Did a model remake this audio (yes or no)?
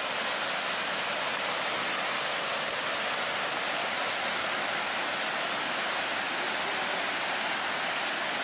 no